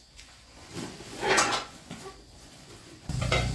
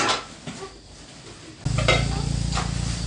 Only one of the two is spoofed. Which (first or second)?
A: first